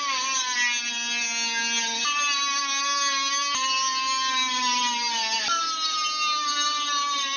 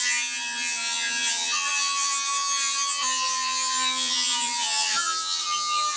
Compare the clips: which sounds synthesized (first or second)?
second